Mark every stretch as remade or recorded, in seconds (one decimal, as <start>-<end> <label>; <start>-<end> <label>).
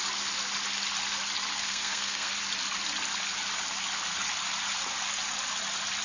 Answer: 0.0-1.5 recorded; 1.5-2.3 remade; 2.3-6.0 recorded